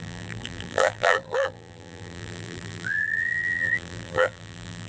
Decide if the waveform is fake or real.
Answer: fake